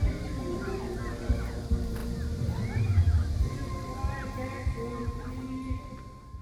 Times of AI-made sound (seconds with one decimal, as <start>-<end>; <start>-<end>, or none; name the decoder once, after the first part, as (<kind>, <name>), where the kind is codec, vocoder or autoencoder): 0.0-3.6 (vocoder, BigVGAN v2); 5.0-6.4